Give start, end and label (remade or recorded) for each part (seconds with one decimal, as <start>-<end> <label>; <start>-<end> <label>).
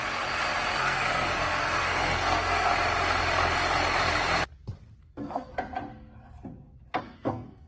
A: 0.0-0.8 recorded; 0.8-2.7 remade; 2.7-5.0 recorded; 5.0-5.5 remade; 5.5-7.0 recorded; 7.0-7.7 remade